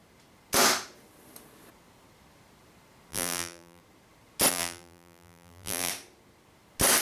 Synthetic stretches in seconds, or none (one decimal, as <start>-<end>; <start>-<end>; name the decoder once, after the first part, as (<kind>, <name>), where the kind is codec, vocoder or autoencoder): 3.1-3.8 (vocoder, BigVGAN v2); 4.5-5.9